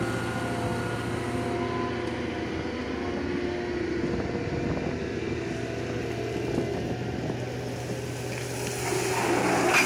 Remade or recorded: recorded